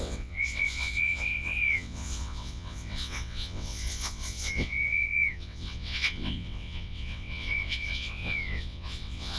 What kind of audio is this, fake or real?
fake